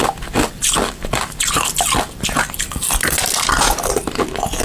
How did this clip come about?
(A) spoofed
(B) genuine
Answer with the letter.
B